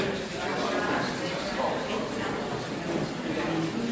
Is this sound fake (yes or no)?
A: no